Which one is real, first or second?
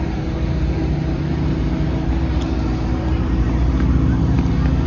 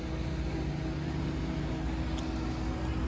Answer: second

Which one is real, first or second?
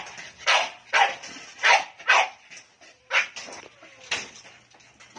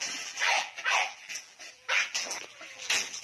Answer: first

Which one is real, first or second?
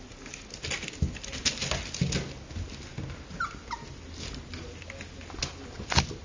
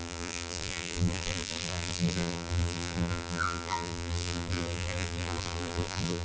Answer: first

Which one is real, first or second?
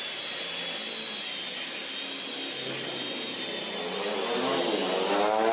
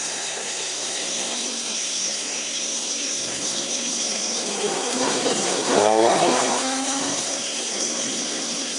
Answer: first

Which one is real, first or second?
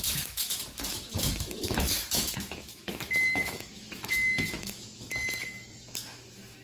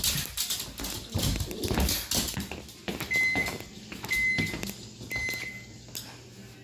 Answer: second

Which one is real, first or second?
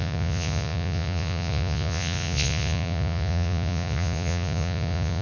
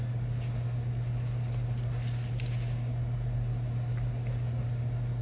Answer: second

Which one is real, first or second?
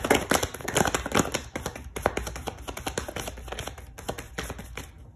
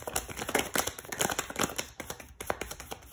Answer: first